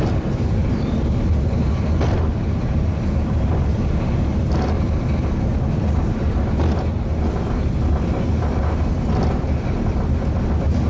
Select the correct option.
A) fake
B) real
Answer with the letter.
B